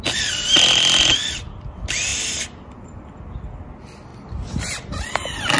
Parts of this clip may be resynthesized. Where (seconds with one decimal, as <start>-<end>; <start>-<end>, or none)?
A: none